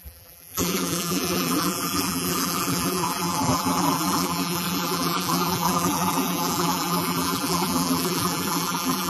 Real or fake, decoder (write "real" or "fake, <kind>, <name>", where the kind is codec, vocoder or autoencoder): fake, vocoder, BigVGAN v2